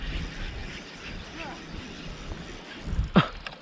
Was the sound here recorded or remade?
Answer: recorded